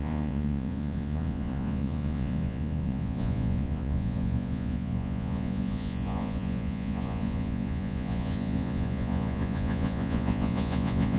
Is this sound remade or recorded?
remade